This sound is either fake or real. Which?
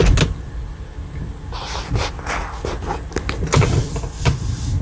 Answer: real